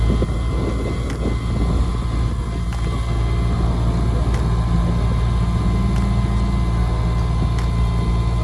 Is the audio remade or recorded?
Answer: recorded